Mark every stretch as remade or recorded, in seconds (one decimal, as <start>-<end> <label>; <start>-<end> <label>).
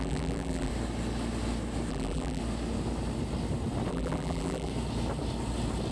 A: 0.0-0.7 remade; 0.7-1.9 recorded; 1.9-2.4 remade; 2.4-3.9 recorded; 3.9-4.7 remade; 4.7-5.9 recorded